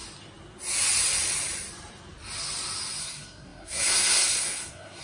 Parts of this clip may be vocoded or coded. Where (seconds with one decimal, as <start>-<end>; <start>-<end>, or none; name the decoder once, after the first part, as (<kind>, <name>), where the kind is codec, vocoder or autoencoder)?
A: 3.0-5.0 (codec, SNAC)